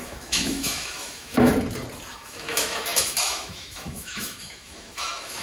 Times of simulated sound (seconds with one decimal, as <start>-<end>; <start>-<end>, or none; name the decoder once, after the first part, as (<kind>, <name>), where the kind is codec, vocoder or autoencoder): 0.0-1.5 (autoencoder, DAC-VAE); 2.1-5.4